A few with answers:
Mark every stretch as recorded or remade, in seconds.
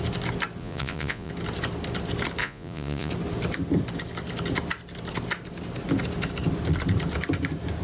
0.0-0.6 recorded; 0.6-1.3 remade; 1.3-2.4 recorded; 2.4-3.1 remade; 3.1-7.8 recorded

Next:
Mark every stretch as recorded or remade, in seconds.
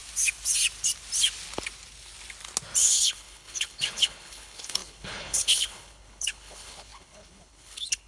0.0-2.8 recorded; 2.8-8.1 remade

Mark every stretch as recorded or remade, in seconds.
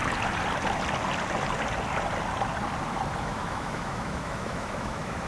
0.0-3.2 recorded; 3.2-5.3 remade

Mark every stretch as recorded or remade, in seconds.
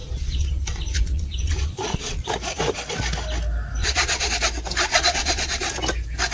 0.0-2.3 remade; 2.3-3.8 recorded; 3.8-4.3 remade; 4.3-4.9 recorded; 4.9-5.7 remade; 5.7-6.3 recorded